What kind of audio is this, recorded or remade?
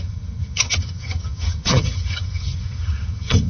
remade